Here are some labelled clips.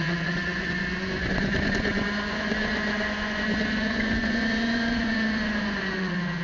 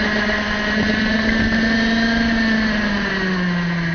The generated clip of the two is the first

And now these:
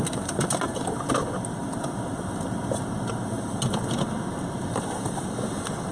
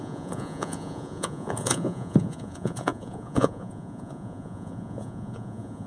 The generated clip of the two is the second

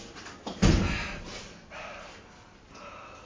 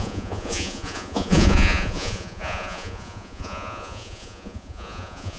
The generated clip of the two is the second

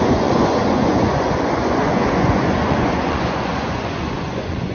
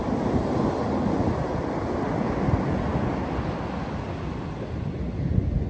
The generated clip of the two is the first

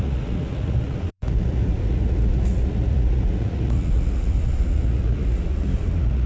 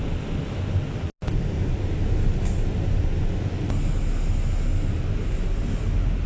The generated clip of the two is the first